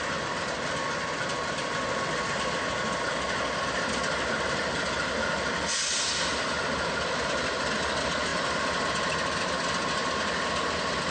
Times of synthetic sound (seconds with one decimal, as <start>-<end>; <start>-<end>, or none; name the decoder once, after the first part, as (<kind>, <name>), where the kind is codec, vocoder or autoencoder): none